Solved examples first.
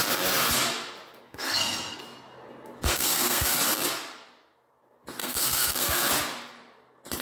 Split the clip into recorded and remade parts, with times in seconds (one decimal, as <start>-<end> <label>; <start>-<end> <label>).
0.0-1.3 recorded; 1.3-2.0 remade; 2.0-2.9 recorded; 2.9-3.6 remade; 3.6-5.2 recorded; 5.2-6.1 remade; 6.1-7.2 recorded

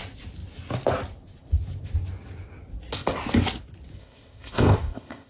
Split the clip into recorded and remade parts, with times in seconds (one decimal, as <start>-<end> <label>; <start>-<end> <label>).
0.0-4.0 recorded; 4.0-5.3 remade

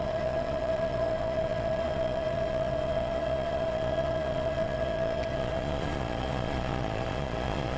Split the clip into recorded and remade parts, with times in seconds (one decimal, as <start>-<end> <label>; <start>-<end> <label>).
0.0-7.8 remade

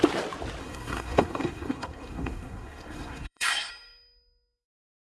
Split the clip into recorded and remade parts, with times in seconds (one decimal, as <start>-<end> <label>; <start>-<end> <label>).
0.0-0.6 recorded; 0.6-3.7 remade; 3.7-5.1 recorded

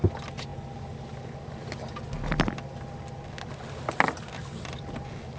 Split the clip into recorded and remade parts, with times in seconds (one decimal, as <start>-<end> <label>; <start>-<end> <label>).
0.0-5.4 recorded

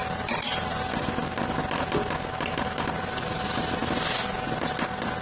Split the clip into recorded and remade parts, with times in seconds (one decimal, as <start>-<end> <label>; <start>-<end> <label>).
0.0-1.2 remade; 1.2-3.0 recorded; 3.0-3.8 remade; 3.8-4.6 recorded; 4.6-5.2 remade